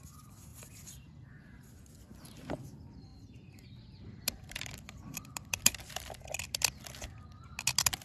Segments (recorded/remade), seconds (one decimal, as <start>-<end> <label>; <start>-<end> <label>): 0.0-0.5 recorded; 0.5-2.2 remade; 2.2-3.1 recorded; 3.1-6.4 remade; 6.4-8.0 recorded